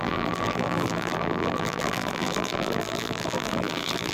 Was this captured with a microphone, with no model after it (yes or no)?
no